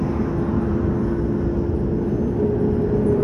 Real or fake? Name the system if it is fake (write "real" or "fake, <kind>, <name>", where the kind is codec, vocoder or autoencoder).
real